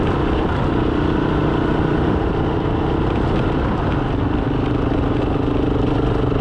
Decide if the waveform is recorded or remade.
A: recorded